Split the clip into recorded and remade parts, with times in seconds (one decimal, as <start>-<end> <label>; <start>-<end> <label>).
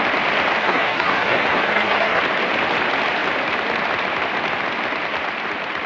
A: 0.0-0.6 recorded; 0.6-2.2 remade; 2.2-5.9 recorded